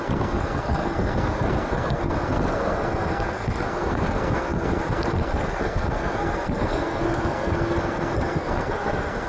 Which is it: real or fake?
fake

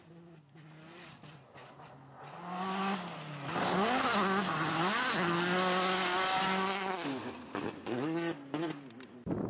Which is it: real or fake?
real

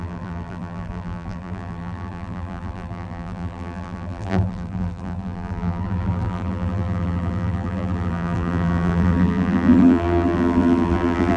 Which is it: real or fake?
fake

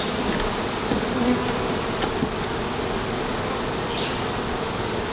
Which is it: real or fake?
real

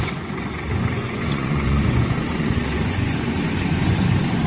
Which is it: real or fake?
fake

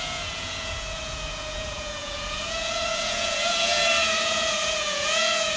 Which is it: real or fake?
fake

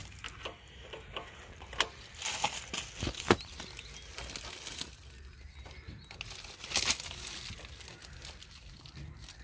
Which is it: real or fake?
real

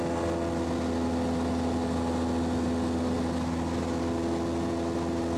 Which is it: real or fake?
real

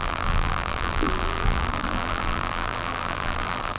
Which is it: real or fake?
fake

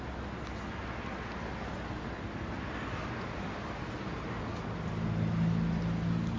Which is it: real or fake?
real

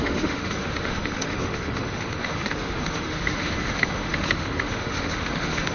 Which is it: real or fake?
fake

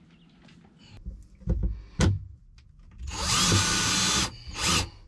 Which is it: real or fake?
real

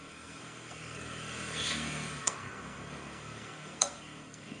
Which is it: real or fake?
fake